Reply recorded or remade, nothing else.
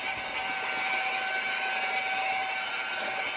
recorded